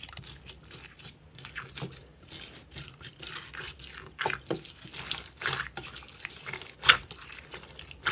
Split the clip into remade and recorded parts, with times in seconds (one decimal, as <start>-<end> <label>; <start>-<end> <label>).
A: 0.0-8.1 recorded